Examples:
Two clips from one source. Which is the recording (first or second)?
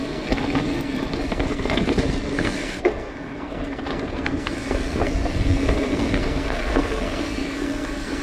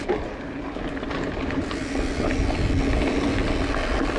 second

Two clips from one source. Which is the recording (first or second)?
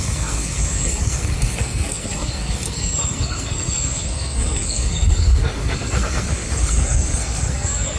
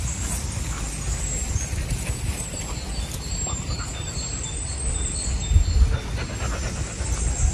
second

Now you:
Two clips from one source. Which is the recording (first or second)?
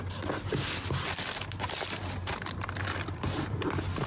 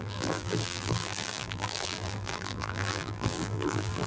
first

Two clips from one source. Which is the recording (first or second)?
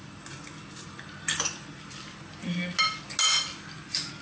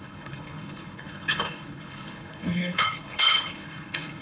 first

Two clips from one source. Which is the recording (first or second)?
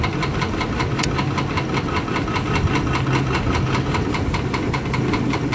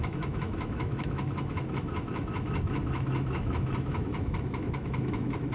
first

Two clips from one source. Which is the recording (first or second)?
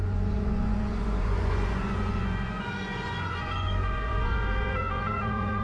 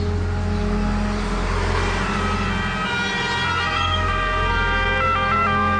second